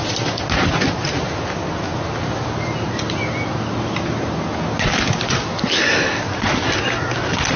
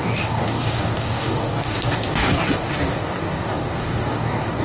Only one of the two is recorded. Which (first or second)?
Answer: first